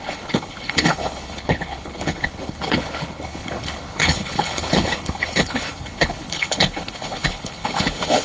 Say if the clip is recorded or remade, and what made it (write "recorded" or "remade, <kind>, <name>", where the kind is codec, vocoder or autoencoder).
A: remade, codec, HILCodec